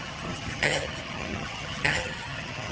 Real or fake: fake